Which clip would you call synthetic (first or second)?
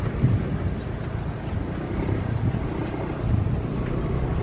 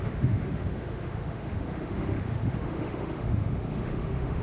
second